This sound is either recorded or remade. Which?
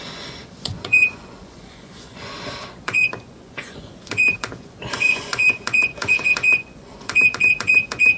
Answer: remade